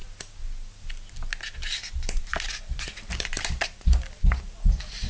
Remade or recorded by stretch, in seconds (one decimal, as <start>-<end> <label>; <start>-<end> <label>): 0.0-5.1 recorded

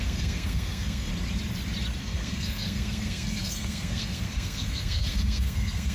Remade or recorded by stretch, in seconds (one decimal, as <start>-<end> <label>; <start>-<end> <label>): 0.0-1.1 remade; 1.1-2.0 recorded; 2.0-5.9 remade